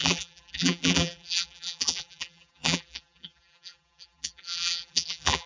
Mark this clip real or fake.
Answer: fake